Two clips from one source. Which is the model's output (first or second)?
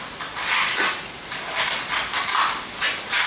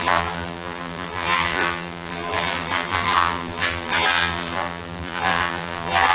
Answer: second